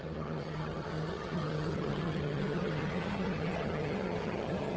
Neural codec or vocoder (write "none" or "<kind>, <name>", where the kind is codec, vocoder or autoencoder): vocoder, HiFi-GAN